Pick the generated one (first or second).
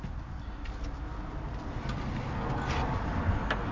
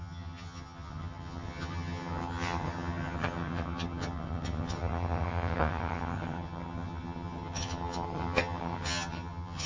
second